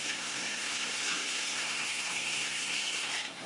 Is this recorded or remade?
remade